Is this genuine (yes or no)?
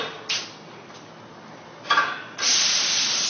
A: yes